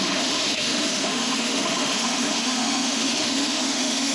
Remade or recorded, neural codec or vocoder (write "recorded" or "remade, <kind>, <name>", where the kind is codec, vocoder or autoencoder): remade, autoencoder, DAC-VAE